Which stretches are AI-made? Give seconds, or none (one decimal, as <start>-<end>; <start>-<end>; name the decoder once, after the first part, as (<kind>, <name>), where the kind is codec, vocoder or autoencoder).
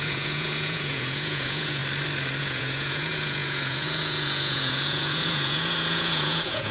0.0-1.8 (vocoder, Vocos); 2.4-6.7